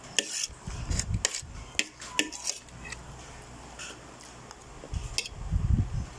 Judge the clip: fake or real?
real